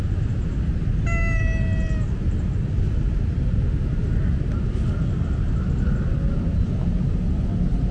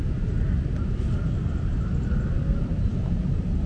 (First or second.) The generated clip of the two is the second